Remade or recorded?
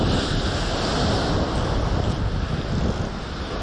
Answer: recorded